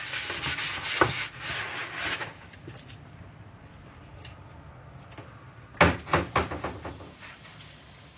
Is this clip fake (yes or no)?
no